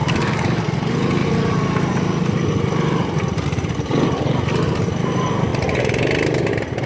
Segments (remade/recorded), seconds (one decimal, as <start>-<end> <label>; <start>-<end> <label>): 0.0-0.6 remade; 0.6-6.9 recorded